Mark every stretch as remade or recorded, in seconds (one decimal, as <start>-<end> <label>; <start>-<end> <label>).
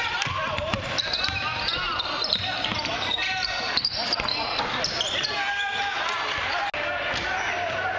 0.0-8.0 recorded